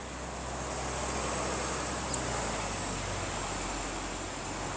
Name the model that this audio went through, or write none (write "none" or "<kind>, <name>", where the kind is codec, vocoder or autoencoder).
none